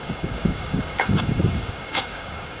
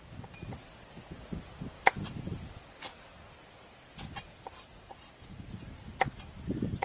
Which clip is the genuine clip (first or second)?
second